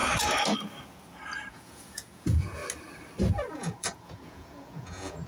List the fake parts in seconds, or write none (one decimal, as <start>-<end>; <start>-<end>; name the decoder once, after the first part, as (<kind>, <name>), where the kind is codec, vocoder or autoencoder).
1.5-2.6 (vocoder, Vocos); 3.5-5.3